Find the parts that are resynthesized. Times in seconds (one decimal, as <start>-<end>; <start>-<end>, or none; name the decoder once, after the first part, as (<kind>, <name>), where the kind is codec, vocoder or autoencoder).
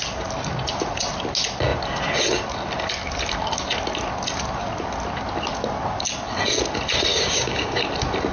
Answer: 7.1-7.8 (codec, DAC)